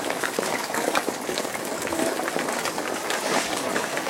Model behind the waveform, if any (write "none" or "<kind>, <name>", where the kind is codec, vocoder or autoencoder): codec, DAC